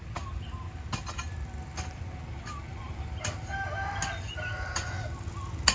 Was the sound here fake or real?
real